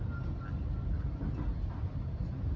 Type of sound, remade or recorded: recorded